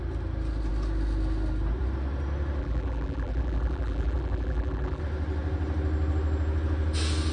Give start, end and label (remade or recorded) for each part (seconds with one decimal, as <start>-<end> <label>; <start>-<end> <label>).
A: 0.0-2.6 recorded; 2.6-5.0 remade; 5.0-7.3 recorded